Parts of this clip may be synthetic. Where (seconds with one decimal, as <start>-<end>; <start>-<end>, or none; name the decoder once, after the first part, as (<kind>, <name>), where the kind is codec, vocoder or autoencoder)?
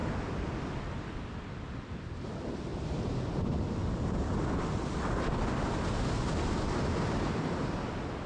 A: 0.0-1.5 (vocoder, BigVGAN v2); 2.7-3.4